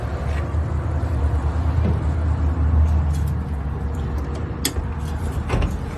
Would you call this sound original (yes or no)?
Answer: yes